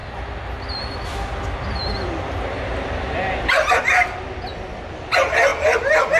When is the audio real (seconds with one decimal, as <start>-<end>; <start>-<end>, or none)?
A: 0.0-6.2